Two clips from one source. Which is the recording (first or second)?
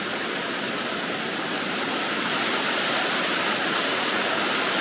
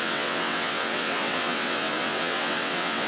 first